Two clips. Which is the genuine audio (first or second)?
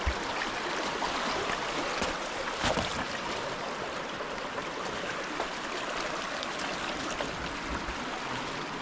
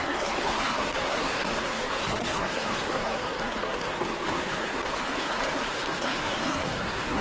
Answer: first